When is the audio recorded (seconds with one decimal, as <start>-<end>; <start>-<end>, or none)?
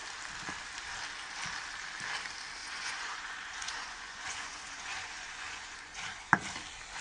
0.0-2.6; 6.3-7.0